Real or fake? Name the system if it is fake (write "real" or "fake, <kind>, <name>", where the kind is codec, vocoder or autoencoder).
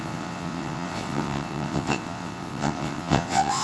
fake, vocoder, WaveNeXt